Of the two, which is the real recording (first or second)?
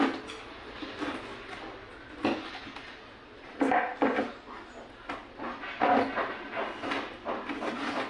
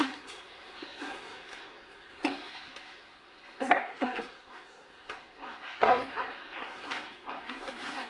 first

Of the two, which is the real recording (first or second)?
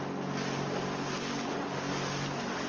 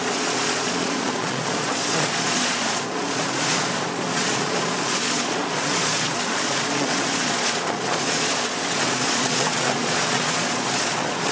first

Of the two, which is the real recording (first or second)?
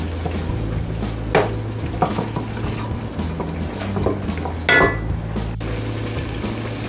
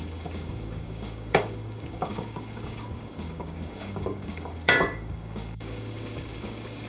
first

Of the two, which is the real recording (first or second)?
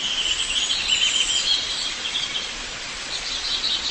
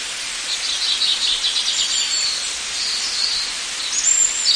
second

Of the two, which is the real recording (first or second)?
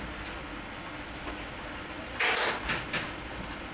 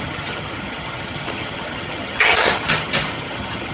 first